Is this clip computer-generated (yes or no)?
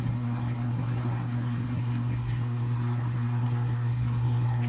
yes